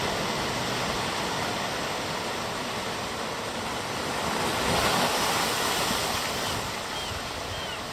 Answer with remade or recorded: recorded